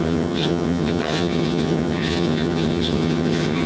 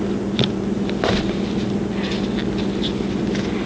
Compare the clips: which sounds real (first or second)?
second